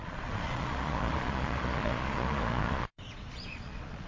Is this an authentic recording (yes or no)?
no